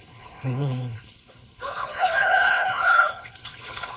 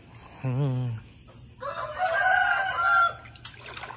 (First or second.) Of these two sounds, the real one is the second